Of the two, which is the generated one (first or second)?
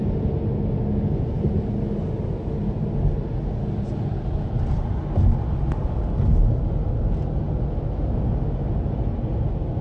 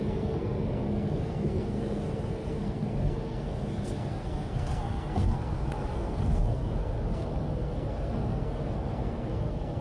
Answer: second